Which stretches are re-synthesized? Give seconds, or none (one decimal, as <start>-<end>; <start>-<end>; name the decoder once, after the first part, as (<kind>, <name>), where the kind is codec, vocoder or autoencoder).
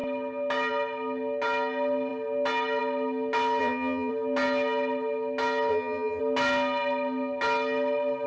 3.6-4.1 (vocoder, HiFi-GAN); 5.7-6.2